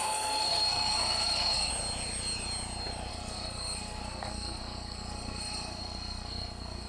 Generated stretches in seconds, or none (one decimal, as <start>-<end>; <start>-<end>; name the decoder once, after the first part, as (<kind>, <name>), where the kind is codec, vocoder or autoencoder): 0.0-1.7 (codec, SNAC); 3.1-6.9